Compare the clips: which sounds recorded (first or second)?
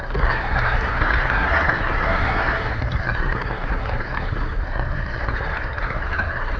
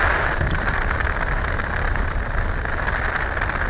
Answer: second